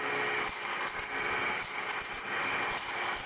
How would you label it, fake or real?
real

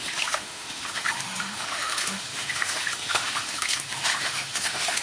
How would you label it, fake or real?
fake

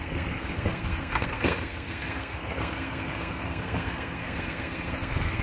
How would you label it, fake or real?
fake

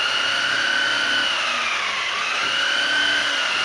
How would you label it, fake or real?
real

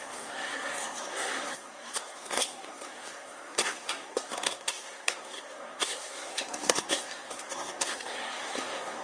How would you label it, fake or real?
fake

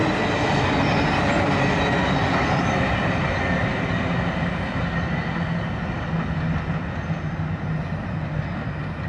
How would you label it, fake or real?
real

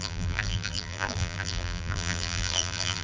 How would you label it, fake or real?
fake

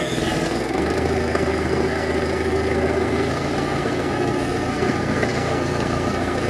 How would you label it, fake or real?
fake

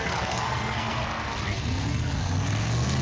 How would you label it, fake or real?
fake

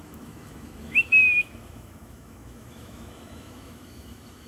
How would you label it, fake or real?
fake